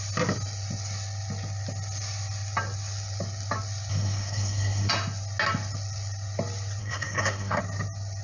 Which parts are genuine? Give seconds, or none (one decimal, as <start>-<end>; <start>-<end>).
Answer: 0.0-3.9; 4.9-6.8; 7.6-8.2